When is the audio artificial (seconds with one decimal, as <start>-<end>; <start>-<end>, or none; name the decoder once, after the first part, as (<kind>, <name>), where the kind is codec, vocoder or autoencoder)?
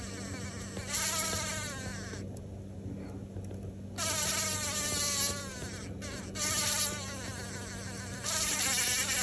none